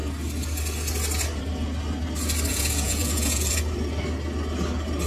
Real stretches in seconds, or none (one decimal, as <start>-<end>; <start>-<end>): 0.0-2.5; 3.6-5.1

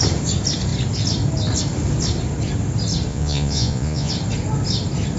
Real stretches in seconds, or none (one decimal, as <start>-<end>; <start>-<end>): 0.0-3.1; 4.1-5.2

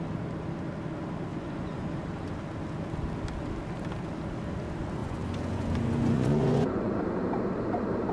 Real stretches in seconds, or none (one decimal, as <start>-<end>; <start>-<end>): 0.0-1.3; 1.9-5.0; 7.0-8.1